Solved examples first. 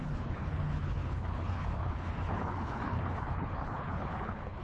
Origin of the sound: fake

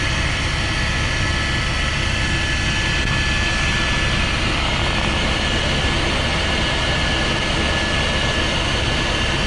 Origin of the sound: real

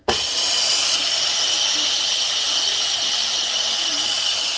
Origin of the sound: real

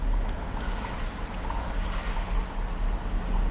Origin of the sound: real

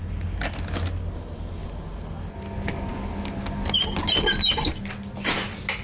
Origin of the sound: real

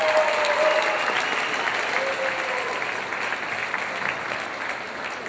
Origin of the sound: real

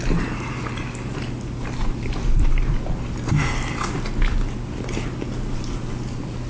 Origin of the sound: real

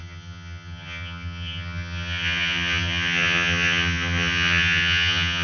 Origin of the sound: fake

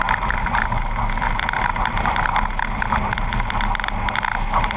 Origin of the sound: real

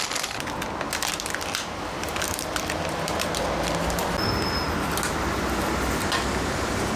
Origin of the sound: real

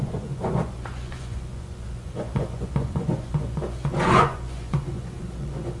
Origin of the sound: fake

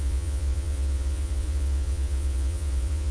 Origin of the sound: fake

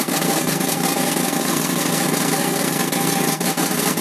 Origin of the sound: fake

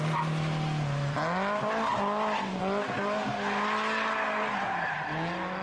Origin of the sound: real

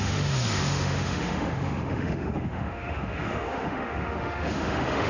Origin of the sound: fake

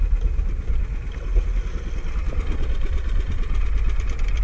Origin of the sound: real